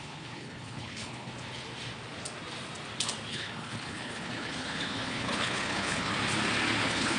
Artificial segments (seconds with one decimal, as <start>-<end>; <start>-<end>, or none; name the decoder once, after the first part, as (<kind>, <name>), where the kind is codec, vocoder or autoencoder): 0.0-1.3 (codec, HILCodec); 3.3-6.1; 6.8-7.2